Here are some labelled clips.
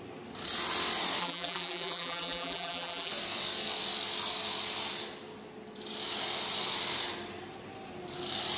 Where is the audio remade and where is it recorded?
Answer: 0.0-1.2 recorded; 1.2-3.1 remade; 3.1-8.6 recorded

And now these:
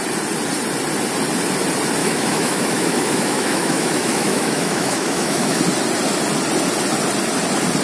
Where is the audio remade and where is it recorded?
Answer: 0.0-2.0 recorded; 2.0-5.6 remade; 5.6-7.8 recorded